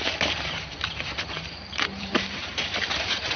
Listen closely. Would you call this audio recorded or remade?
remade